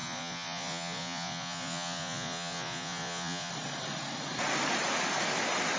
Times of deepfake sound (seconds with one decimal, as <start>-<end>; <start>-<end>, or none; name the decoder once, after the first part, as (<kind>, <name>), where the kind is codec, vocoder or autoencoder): 0.0-3.5 (vocoder, Vocos)